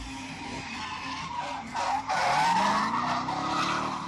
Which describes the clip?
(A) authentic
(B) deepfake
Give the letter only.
A